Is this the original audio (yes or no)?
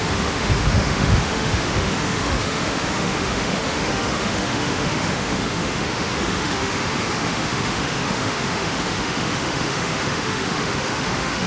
no